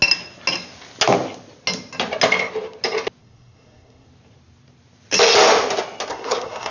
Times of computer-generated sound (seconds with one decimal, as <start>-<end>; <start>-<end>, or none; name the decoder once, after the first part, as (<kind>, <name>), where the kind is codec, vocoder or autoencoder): 3.2-4.1 (codec, SNAC); 6.1-6.7